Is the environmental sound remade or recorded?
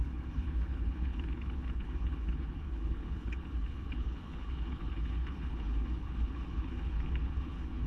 remade